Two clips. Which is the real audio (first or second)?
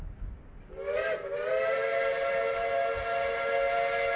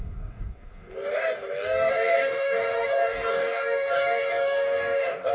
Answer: first